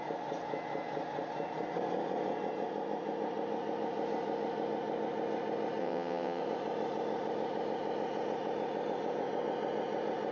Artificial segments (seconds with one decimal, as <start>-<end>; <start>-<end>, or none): 5.8-6.4